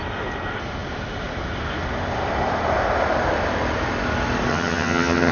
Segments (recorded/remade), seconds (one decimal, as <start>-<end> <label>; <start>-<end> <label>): 0.0-4.5 recorded; 4.5-5.3 remade